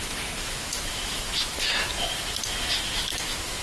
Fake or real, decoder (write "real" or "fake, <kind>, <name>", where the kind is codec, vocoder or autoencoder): fake, autoencoder, DAC-VAE